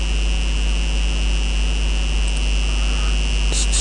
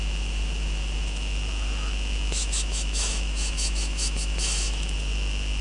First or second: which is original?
first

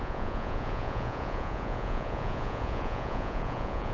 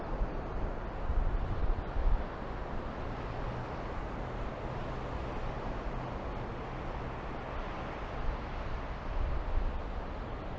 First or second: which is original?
second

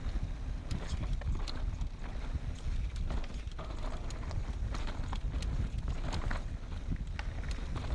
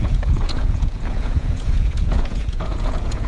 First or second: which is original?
first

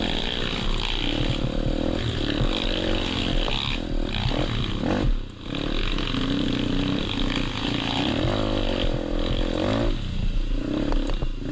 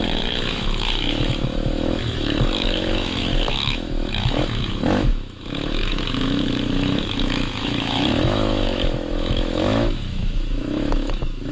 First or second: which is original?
first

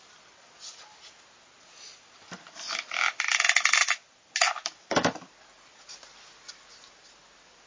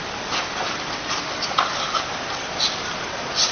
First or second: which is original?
first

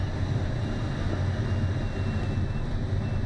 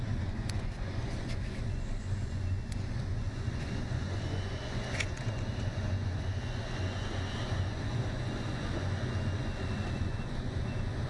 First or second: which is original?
first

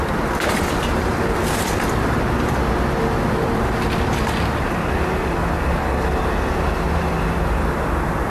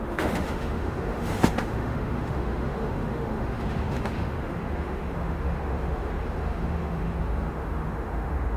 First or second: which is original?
first